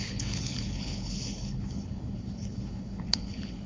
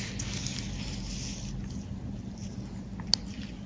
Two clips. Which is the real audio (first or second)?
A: second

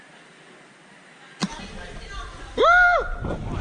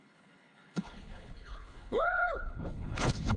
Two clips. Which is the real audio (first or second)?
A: first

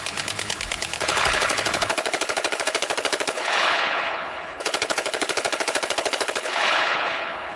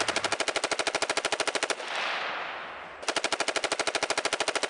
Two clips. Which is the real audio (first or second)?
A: second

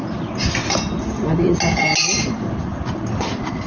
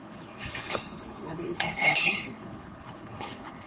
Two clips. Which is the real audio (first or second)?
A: first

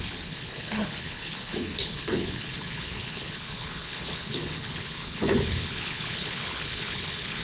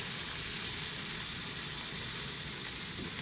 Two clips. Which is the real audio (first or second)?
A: second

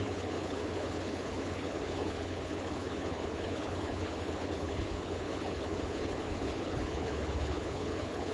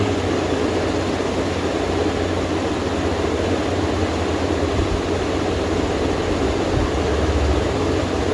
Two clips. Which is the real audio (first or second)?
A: second